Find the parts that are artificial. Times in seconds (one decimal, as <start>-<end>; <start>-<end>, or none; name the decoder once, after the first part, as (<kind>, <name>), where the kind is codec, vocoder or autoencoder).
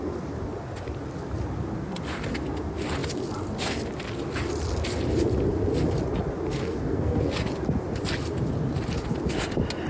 6.5-7.2 (codec, SNAC)